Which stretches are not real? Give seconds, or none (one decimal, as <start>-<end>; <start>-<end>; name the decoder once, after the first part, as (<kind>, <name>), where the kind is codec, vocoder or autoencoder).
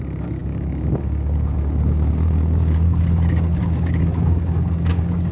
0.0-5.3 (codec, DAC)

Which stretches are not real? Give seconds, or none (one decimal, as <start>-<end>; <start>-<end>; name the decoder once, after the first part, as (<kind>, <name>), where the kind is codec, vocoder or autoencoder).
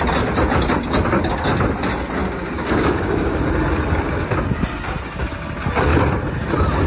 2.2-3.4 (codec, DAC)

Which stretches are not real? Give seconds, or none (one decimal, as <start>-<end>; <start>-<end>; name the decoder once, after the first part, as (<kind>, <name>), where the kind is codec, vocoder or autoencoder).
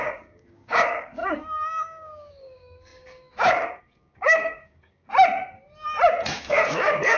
0.0-5.1 (codec, DAC); 6.3-7.2